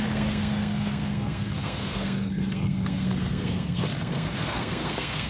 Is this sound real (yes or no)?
no